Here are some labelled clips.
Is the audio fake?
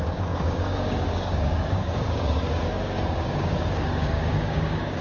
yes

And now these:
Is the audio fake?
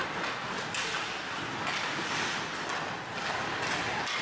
no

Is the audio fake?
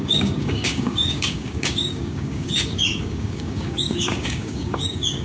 yes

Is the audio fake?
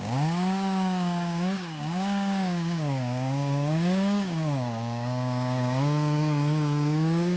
yes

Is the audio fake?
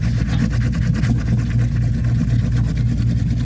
no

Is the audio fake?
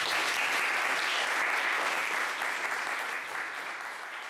no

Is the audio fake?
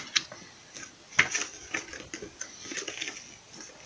no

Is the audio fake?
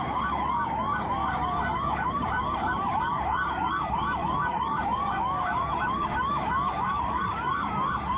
yes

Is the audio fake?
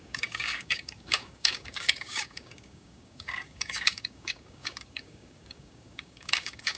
yes